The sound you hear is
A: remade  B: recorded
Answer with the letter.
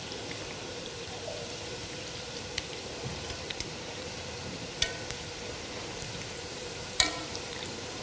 A